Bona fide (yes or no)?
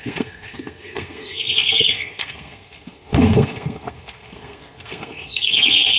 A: no